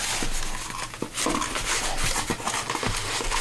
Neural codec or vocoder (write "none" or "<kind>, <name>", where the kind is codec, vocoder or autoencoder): none